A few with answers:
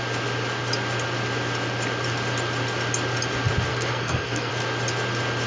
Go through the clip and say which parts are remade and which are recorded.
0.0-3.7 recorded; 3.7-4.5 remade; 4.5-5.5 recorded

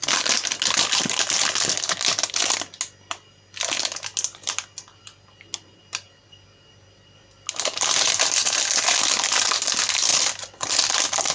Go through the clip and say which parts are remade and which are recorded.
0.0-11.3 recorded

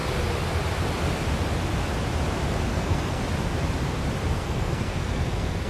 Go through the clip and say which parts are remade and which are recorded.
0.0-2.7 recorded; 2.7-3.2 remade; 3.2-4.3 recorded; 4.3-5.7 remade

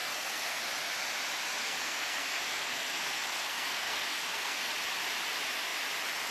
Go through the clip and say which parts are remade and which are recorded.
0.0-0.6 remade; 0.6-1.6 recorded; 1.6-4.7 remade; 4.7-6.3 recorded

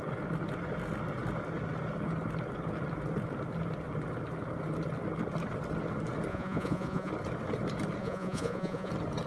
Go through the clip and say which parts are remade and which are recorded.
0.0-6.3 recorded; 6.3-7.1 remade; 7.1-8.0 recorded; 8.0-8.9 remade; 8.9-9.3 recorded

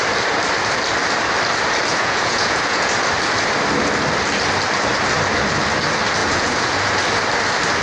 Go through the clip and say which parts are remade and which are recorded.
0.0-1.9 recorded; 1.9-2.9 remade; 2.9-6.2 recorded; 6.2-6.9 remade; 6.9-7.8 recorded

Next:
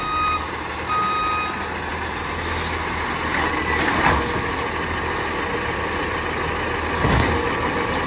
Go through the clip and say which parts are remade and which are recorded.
0.0-8.1 recorded